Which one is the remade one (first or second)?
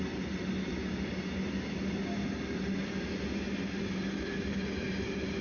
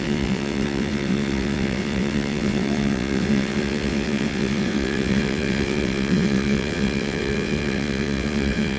second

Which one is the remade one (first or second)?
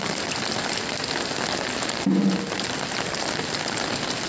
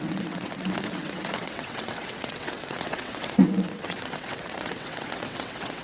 second